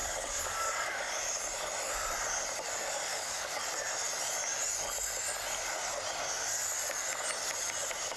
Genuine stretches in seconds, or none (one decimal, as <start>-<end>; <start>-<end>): 1.2-3.1; 3.6-8.2